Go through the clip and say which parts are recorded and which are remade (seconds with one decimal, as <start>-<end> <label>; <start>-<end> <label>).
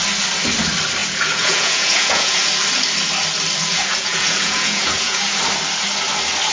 0.0-1.0 recorded; 1.0-2.4 remade; 2.4-3.6 recorded; 3.6-5.4 remade; 5.4-6.5 recorded